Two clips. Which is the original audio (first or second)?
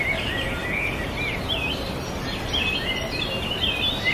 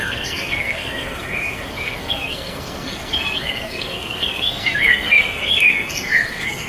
first